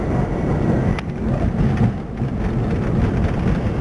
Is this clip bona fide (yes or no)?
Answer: yes